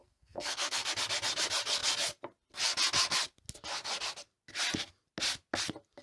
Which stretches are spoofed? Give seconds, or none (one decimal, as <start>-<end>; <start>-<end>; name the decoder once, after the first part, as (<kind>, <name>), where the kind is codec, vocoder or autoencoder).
0.0-0.9 (codec, SNAC)